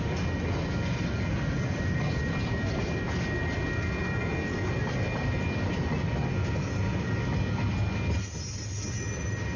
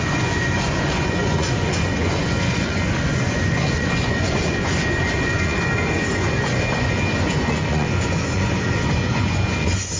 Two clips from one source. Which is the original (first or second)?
first